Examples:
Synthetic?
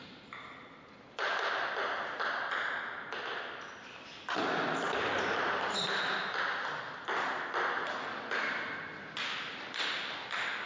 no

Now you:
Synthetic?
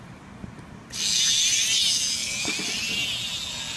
no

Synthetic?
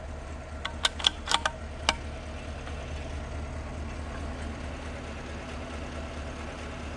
no